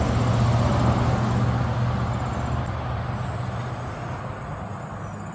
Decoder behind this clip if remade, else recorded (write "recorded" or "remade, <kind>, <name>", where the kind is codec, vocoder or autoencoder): recorded